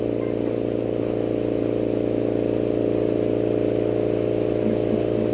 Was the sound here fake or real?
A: real